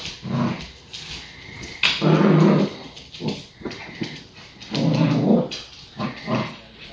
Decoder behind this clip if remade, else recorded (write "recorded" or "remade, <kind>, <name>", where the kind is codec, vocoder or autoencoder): recorded